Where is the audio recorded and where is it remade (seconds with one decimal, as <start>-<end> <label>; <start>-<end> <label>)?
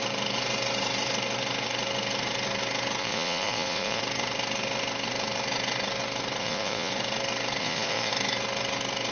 0.0-3.0 recorded; 3.0-4.0 remade; 4.0-6.4 recorded; 6.4-6.9 remade; 6.9-7.6 recorded; 7.6-8.1 remade; 8.1-9.1 recorded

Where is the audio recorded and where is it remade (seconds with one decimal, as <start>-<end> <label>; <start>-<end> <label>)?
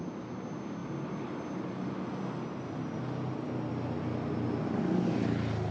0.0-5.7 recorded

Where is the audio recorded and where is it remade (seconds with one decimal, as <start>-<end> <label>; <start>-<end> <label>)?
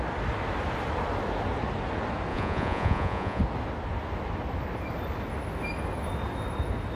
0.0-2.3 recorded; 2.3-3.4 remade; 3.4-7.0 recorded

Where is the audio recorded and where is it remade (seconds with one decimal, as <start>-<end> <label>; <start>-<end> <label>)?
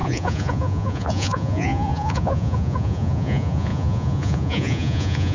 0.0-5.3 remade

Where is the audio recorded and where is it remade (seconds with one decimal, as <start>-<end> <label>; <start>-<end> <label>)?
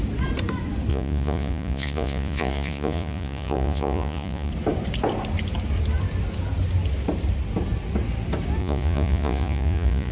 0.0-0.9 recorded; 0.9-4.5 remade; 4.5-8.6 recorded; 8.6-10.1 remade